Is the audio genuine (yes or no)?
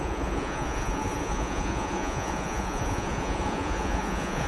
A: no